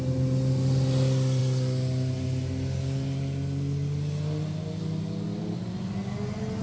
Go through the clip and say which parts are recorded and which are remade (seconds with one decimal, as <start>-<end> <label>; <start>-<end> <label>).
0.0-6.6 recorded